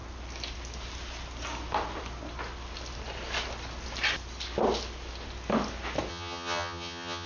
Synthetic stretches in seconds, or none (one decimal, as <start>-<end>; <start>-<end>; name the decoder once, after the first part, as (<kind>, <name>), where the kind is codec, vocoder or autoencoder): 6.1-7.3 (vocoder, HiFi-GAN)